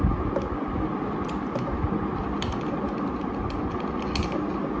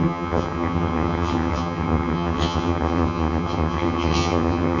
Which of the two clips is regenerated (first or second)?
second